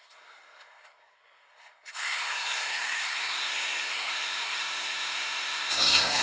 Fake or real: fake